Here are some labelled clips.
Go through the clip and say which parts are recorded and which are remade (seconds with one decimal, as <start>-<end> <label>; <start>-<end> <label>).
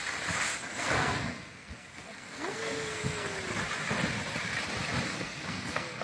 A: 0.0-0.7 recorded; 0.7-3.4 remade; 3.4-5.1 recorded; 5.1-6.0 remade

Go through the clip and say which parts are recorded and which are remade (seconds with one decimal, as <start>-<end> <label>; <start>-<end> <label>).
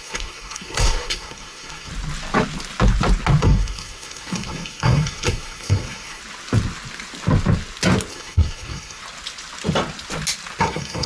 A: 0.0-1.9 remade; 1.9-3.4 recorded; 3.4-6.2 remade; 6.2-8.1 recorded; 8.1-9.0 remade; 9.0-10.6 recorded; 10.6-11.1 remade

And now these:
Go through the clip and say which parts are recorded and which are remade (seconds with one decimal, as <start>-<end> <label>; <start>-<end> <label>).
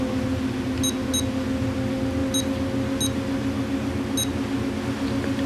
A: 0.0-5.5 recorded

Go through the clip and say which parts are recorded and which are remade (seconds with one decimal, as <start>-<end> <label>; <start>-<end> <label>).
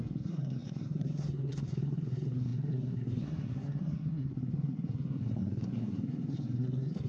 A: 0.0-7.1 remade